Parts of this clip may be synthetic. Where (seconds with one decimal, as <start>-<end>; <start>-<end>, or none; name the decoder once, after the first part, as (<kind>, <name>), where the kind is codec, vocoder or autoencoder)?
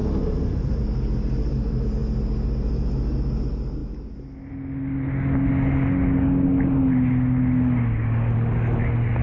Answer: 0.0-0.8 (vocoder, BigVGAN v2)